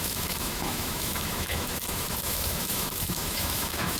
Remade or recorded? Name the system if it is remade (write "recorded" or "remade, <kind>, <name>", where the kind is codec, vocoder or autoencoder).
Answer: remade, autoencoder, DAC-VAE